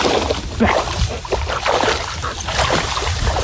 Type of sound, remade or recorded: recorded